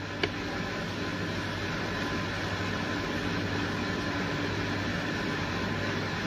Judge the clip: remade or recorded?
recorded